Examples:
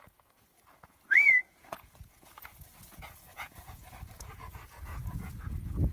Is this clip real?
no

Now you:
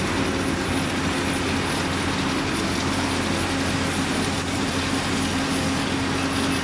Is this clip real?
yes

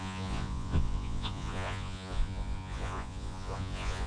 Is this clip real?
no